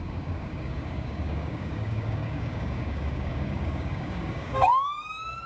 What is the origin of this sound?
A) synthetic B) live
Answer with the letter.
A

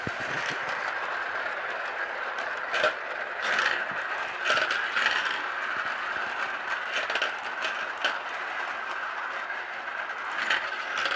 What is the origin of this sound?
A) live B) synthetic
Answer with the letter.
A